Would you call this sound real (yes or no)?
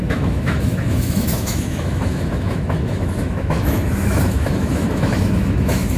no